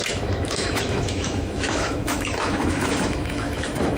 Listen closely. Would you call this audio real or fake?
fake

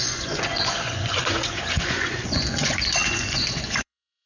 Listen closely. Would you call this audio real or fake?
fake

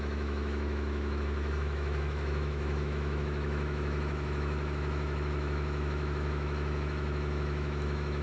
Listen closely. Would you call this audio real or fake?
fake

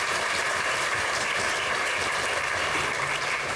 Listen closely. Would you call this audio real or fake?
fake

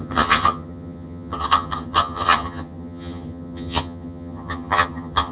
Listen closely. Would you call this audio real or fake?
fake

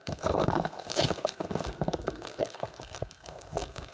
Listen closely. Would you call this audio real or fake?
fake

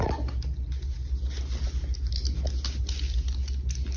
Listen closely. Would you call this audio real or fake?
real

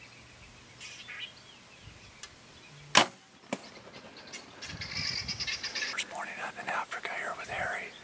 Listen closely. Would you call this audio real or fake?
real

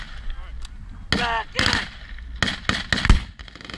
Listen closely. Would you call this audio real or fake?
real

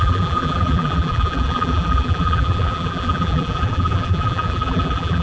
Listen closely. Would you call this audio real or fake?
fake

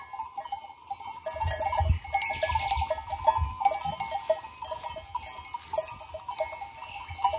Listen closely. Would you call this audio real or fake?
real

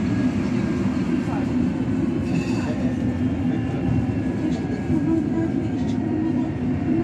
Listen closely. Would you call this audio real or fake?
real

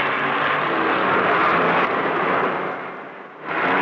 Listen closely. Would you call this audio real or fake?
real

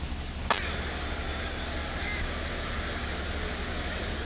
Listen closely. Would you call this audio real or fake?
real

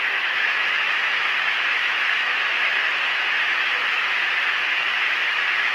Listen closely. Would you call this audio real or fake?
fake